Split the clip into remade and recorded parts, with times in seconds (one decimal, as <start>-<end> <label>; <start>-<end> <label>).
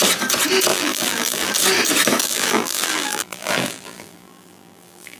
0.0-0.7 recorded; 0.7-1.5 remade; 1.5-2.2 recorded; 2.2-5.2 remade